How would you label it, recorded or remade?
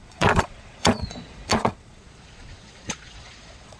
remade